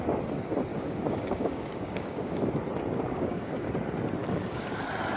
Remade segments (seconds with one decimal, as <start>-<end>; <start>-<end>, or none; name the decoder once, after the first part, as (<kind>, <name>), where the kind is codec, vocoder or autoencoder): 0.7-2.4 (codec, DAC); 3.1-3.7; 4.2-4.8